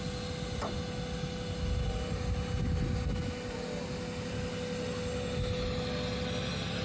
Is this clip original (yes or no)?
yes